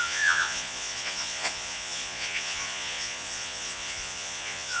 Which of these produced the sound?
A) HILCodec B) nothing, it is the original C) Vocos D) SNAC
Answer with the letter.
C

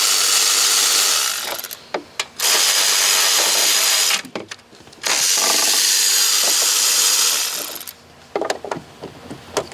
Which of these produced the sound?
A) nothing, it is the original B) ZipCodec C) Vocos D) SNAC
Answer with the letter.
A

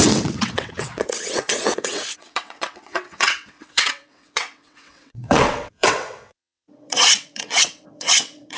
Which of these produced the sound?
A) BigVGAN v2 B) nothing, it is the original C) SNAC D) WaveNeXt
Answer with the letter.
D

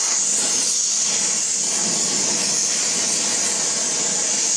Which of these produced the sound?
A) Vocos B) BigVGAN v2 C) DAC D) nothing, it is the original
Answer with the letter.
D